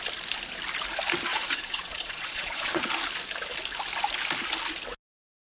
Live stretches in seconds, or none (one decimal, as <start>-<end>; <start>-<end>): 0.0-1.3; 2.9-5.6